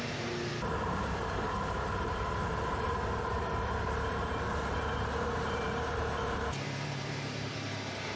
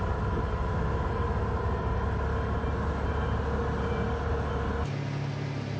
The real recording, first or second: second